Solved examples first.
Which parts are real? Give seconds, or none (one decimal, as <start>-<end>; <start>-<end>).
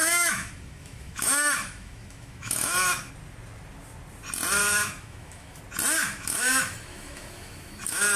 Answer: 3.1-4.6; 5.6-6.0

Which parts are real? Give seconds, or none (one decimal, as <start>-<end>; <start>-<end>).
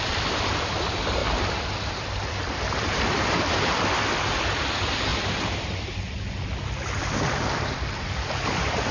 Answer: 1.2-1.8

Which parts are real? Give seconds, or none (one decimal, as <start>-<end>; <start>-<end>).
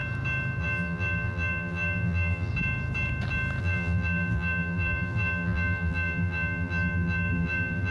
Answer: 0.0-0.6; 2.5-3.6